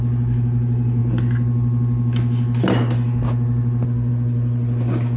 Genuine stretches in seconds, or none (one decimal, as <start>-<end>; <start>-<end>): 0.0-5.2